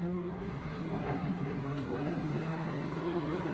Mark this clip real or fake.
fake